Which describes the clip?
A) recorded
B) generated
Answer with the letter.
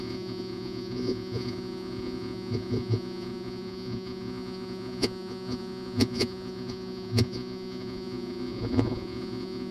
B